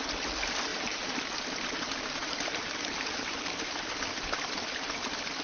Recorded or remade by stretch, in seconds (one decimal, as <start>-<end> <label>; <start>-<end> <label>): 0.0-0.7 recorded; 0.7-3.9 remade; 3.9-5.4 recorded